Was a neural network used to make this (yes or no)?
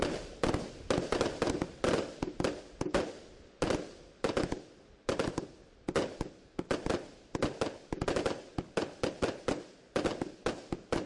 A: no